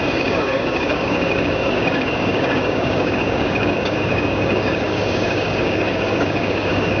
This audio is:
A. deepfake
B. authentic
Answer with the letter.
A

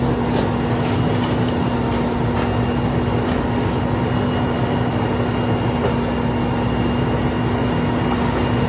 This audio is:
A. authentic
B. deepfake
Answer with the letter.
A